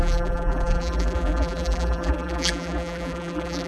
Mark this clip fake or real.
fake